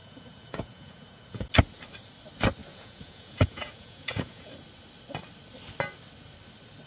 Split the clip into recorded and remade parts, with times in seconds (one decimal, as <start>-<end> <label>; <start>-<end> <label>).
0.0-1.5 remade; 1.5-2.6 recorded; 2.6-4.5 remade; 4.5-6.9 recorded